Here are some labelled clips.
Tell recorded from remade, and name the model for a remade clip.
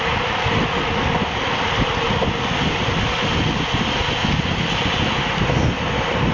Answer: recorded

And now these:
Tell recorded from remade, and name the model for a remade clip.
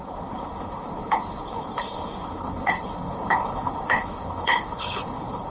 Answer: remade, codec, HILCodec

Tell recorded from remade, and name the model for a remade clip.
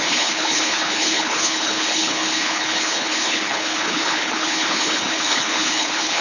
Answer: remade, codec, HILCodec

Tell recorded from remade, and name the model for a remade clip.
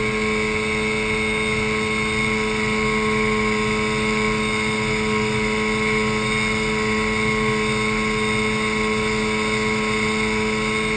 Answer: recorded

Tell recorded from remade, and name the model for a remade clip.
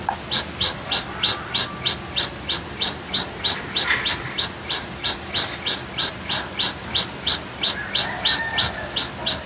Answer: recorded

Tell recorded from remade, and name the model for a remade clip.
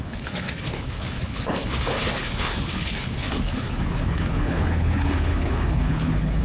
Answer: remade, codec, HILCodec